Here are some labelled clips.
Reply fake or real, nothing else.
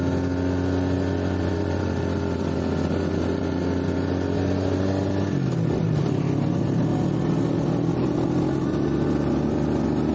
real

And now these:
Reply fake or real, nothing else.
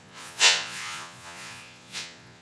fake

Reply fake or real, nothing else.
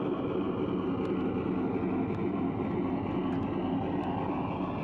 real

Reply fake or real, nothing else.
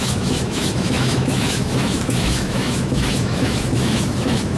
fake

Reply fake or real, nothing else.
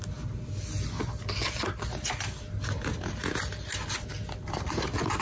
real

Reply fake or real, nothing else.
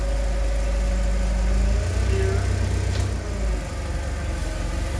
real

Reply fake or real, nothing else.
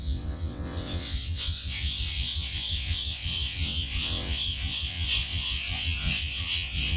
fake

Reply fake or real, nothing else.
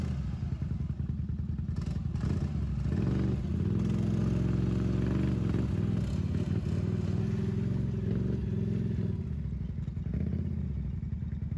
real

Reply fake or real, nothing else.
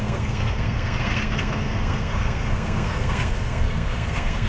fake